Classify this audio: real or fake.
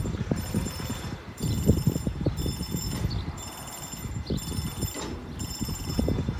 fake